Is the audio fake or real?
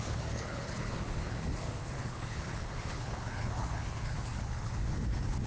fake